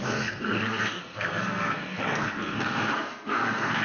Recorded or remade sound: remade